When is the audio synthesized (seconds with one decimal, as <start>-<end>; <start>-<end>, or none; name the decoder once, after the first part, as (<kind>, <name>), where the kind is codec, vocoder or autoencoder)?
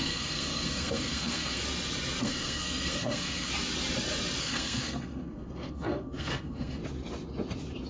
0.0-1.6 (codec, SNAC); 2.2-3.5; 4.4-6.8